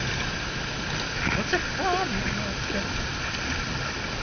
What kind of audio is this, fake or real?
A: real